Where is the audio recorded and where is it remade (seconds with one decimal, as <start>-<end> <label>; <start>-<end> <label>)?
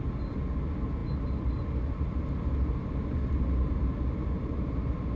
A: 0.0-5.2 recorded